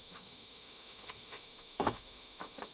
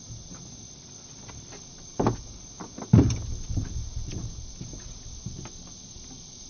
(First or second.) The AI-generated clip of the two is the first